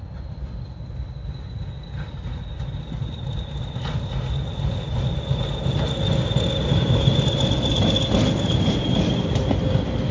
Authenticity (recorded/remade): recorded